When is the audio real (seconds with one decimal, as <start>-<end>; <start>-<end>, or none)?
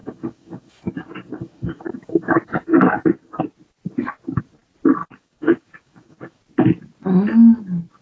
3.4-5.0; 6.4-8.0